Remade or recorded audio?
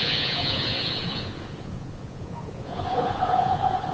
remade